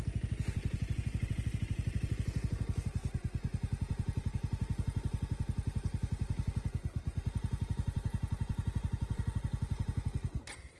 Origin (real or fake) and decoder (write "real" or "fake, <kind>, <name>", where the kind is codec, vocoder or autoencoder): real